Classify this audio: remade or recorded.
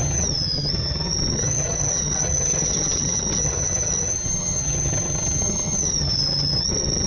remade